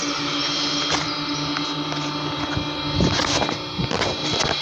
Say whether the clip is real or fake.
real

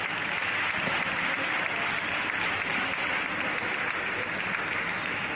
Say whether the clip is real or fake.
real